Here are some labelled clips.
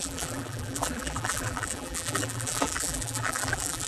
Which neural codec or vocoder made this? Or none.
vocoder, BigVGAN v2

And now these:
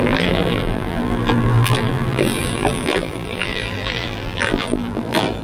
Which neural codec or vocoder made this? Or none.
vocoder, BigVGAN v2